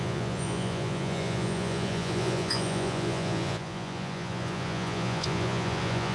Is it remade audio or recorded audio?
remade